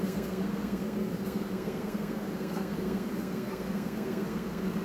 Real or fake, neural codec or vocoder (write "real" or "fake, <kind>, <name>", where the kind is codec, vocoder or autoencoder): fake, codec, SNAC